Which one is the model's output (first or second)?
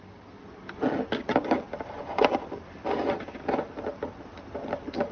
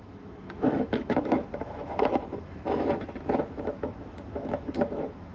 second